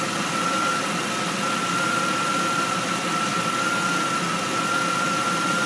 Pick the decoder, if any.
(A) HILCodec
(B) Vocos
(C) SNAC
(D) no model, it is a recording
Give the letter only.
D